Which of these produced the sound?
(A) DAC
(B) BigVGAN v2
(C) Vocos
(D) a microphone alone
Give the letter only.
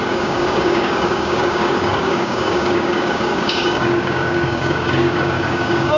A